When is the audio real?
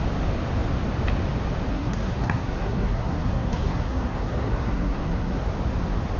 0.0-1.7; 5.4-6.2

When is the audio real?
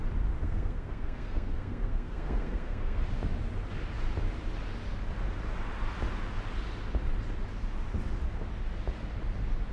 0.0-0.4; 3.0-9.7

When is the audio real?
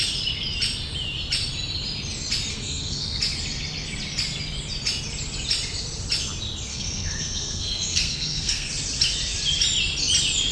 0.0-2.5; 3.2-6.7; 8.7-10.5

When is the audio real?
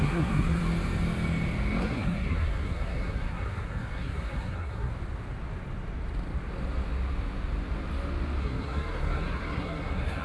0.6-1.8; 4.9-8.4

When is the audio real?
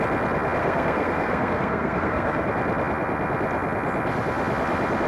0.0-0.6; 2.5-5.1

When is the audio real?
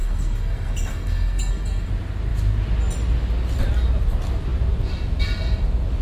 1.9-6.0